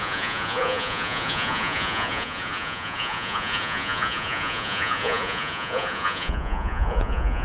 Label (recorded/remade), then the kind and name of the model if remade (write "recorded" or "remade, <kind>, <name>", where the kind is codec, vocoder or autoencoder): remade, vocoder, Vocos